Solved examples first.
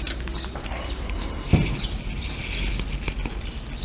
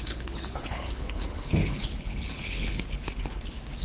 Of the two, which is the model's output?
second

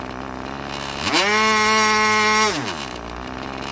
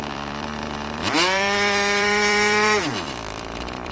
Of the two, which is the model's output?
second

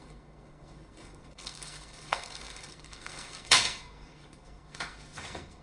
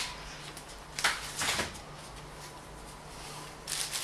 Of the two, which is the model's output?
first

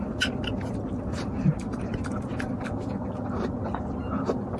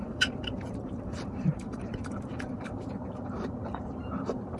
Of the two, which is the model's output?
second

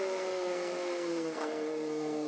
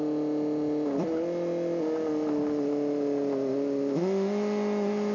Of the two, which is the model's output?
first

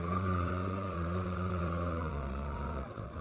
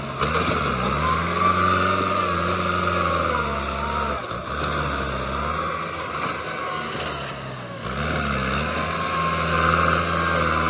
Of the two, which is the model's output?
first